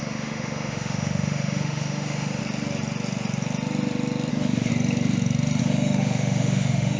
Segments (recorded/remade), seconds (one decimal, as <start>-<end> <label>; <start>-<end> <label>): 0.0-2.4 remade; 2.4-4.3 recorded; 4.3-4.7 remade; 4.7-5.6 recorded; 5.6-7.0 remade